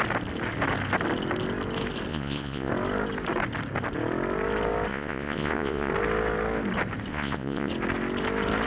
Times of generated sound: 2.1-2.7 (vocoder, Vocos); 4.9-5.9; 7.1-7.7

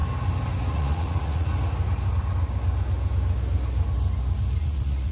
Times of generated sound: 0.7-1.5 (vocoder, Vocos); 4.6-5.1

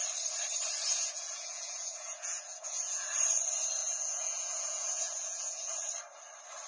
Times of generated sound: 0.9-3.1 (vocoder, Vocos); 3.8-5.7

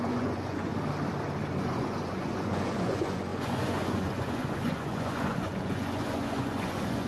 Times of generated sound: 0.0-0.7 (vocoder, Vocos); 1.6-7.1

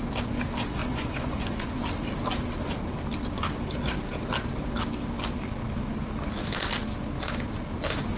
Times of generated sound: 0.8-1.8 (vocoder, Vocos)